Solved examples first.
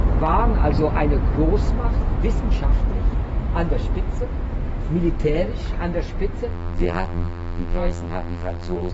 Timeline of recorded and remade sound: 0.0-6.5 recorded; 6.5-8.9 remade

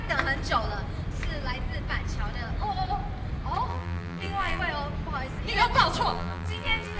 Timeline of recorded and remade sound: 0.0-3.7 recorded; 3.7-4.6 remade; 4.6-6.1 recorded; 6.1-7.0 remade